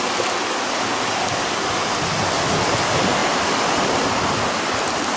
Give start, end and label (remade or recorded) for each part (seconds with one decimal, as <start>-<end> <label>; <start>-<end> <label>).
0.0-5.2 recorded